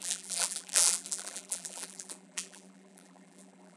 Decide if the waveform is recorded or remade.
remade